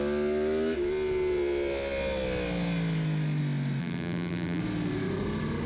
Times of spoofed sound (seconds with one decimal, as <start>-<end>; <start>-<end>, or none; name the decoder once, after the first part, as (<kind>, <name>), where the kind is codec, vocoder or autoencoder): 3.8-4.6 (vocoder, BigVGAN v2)